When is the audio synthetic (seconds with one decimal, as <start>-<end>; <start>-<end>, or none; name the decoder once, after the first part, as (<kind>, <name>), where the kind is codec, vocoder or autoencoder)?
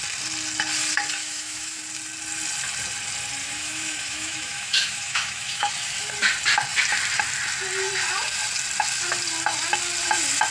1.2-1.8 (autoencoder, DAC-VAE); 3.4-5.7